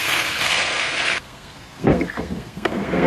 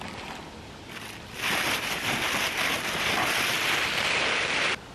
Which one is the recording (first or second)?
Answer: second